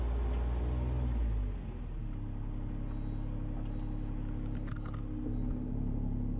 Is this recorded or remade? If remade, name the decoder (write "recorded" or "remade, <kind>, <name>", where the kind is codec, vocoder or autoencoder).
recorded